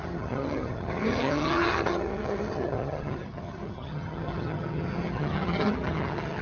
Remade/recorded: remade